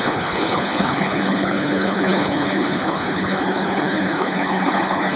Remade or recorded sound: remade